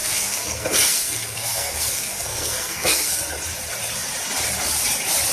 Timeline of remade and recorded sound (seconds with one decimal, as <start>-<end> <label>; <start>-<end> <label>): 0.0-3.2 remade; 3.2-5.3 recorded